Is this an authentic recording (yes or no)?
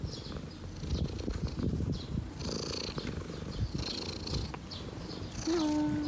yes